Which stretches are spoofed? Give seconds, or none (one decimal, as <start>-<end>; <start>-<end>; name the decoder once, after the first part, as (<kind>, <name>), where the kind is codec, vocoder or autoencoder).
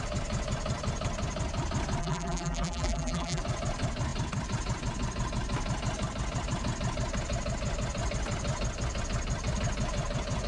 2.0-3.4 (vocoder, BigVGAN v2)